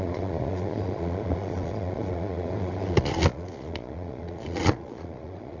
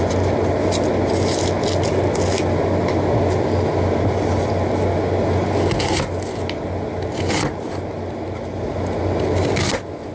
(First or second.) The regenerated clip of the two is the first